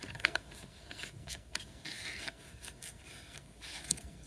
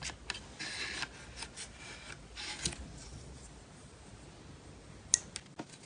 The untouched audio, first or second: second